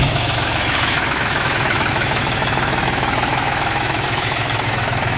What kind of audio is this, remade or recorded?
remade